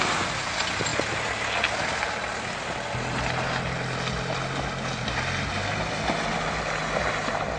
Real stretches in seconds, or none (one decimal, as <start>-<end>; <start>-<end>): 0.0-7.6